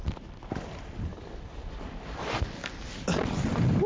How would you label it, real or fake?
real